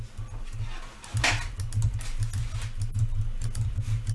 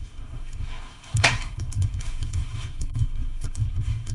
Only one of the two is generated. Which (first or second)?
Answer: second